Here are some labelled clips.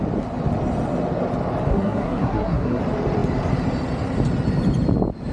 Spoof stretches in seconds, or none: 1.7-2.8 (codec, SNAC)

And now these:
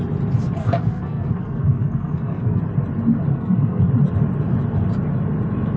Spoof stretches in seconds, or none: 0.6-2.6 (codec, SNAC); 3.3-3.9

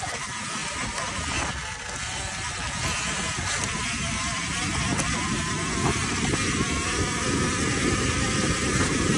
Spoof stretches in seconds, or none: none

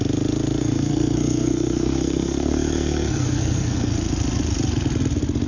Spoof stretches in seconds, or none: 0.6-3.9 (codec, SNAC)

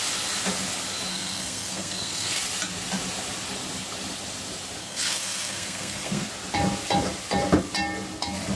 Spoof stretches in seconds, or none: 1.1-2.4 (codec, SNAC); 4.8-6.3